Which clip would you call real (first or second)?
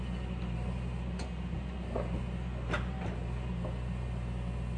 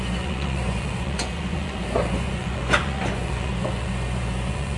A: first